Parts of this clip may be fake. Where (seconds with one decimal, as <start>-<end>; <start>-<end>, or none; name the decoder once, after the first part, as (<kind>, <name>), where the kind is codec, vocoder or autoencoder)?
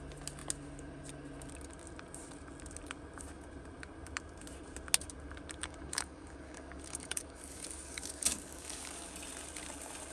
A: 5.6-9.1 (codec, DAC)